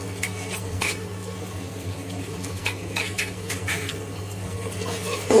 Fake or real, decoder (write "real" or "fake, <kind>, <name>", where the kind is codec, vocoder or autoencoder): fake, codec, SNAC